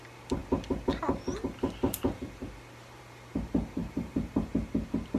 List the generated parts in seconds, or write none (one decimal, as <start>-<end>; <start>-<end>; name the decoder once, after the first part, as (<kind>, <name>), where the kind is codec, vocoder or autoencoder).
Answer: 3.8-4.4 (vocoder, BigVGAN v2)